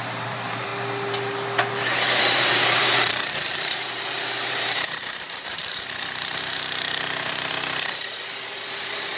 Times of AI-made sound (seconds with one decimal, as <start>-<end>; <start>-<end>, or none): 0.0-0.7; 1.7-9.2